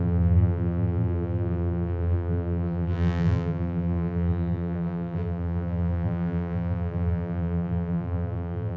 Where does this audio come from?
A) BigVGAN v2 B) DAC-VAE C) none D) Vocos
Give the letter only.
A